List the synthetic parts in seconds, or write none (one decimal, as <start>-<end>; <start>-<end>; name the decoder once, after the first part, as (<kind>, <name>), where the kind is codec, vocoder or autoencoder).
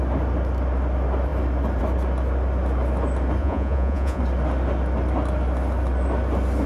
3.4-4.2 (vocoder, Vocos)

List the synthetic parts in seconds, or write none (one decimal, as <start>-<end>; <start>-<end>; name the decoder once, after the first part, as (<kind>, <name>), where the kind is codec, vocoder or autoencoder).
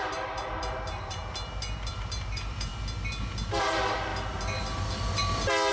0.0-1.2 (vocoder, BigVGAN v2); 1.9-2.7; 3.6-4.1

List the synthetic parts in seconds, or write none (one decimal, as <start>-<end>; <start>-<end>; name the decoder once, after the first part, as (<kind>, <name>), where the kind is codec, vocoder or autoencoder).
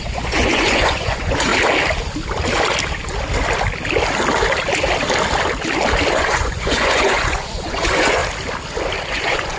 0.0-1.5 (vocoder, Vocos); 6.1-8.2; 9.1-9.6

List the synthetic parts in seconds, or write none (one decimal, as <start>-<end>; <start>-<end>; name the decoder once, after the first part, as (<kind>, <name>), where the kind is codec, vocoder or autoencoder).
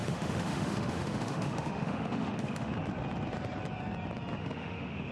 0.0-2.7 (autoencoder, DAC-VAE); 4.4-5.1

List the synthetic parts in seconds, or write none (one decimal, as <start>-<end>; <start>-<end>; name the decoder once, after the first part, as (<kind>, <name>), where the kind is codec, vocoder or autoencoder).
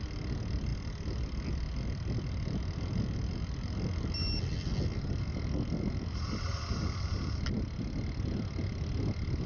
none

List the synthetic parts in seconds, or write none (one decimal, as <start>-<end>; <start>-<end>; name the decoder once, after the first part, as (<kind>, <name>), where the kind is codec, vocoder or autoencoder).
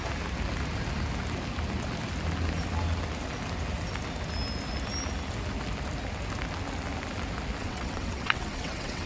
7.6-9.1 (vocoder, WaveNeXt)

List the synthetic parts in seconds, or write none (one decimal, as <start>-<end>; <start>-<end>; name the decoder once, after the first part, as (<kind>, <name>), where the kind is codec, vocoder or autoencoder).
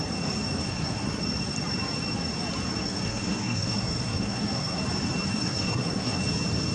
0.6-1.2 (codec, SNAC); 2.8-4.8; 5.3-6.2